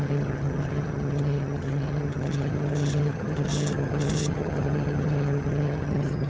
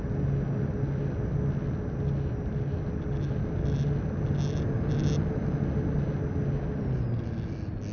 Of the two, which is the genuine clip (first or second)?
second